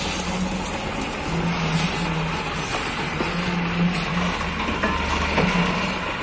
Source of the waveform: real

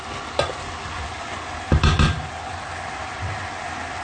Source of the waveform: real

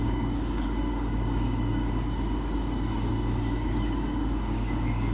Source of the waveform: fake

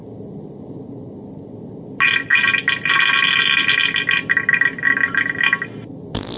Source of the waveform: real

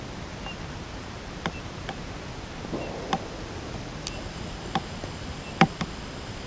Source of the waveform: real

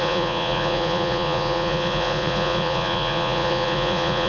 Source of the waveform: fake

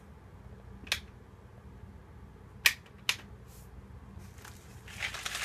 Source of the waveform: real